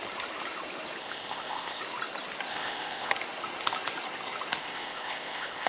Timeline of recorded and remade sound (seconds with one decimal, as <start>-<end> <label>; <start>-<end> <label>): 0.0-1.0 recorded; 1.0-1.8 remade; 1.8-2.5 recorded; 2.5-3.1 remade; 3.1-4.6 recorded; 4.6-5.7 remade